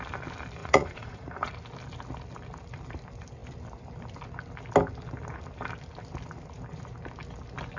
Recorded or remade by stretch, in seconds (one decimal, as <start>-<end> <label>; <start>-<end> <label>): 0.0-0.6 recorded; 0.6-1.5 remade; 1.5-7.8 recorded